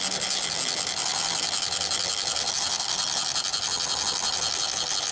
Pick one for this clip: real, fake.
real